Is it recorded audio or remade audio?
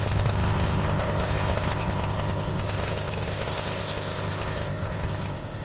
remade